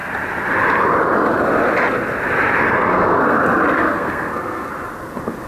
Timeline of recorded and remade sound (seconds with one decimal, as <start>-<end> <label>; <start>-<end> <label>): 0.0-2.9 recorded; 2.9-3.4 remade; 3.4-3.8 recorded; 3.8-4.7 remade; 4.7-5.5 recorded

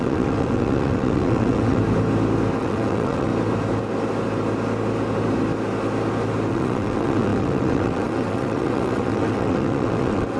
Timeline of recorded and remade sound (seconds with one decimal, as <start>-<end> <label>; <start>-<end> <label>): 0.0-1.8 remade; 1.8-2.6 recorded; 2.6-3.3 remade; 3.3-6.5 recorded; 6.5-10.4 remade

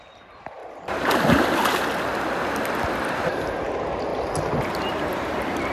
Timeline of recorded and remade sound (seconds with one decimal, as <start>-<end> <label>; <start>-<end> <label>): 0.0-0.6 remade; 0.6-3.2 recorded; 3.2-4.1 remade; 4.1-4.9 recorded; 4.9-5.7 remade

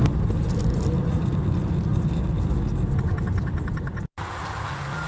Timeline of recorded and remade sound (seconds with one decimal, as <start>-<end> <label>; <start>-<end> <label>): 0.0-5.1 recorded

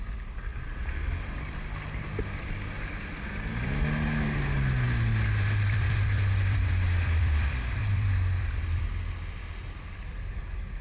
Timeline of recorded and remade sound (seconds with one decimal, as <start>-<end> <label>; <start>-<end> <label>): 0.0-5.1 recorded; 5.1-8.8 remade; 8.8-10.8 recorded

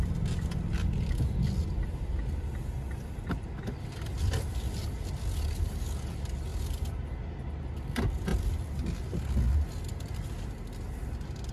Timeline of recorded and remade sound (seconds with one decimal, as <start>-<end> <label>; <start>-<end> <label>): 0.0-11.5 recorded

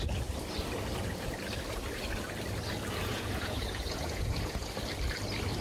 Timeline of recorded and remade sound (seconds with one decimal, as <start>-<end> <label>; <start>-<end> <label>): 0.0-3.1 recorded; 3.1-4.7 remade; 4.7-5.6 recorded

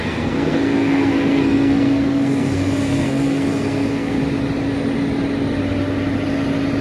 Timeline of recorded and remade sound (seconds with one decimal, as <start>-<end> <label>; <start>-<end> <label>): 0.0-4.2 remade; 4.2-6.8 recorded